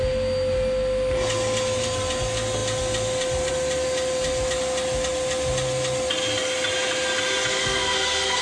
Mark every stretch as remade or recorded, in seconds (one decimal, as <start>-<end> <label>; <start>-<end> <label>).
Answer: 0.0-7.6 recorded; 7.6-8.4 remade